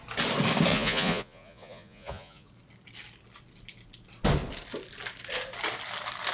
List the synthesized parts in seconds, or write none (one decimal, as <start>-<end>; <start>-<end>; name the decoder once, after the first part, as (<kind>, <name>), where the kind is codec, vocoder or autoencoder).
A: 0.7-2.5 (vocoder, Vocos)